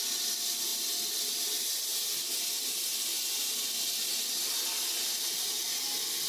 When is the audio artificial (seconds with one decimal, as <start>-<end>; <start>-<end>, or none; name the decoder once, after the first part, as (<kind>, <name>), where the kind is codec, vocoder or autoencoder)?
none